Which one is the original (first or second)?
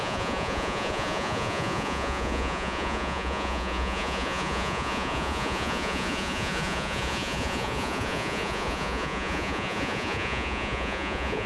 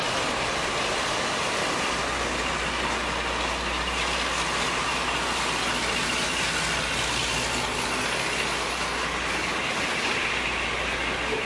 second